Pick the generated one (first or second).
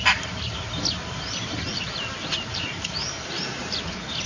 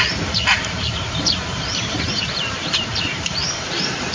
second